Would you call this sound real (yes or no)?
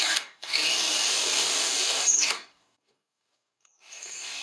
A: no